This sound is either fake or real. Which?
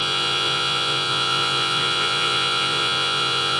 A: fake